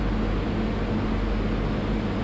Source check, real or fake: real